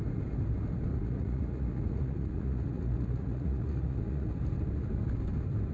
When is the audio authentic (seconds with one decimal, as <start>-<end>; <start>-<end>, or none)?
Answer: 0.0-0.9; 4.3-5.7